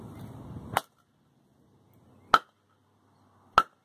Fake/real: real